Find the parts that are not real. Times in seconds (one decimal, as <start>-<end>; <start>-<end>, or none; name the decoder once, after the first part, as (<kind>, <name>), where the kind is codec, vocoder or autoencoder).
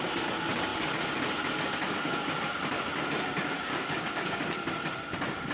3.7-4.4 (codec, DAC)